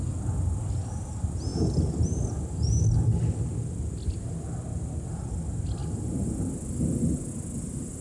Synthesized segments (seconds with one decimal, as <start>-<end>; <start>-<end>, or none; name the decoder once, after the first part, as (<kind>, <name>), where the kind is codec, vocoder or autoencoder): none